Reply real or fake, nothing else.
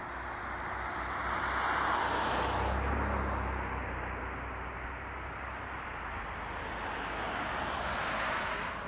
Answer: real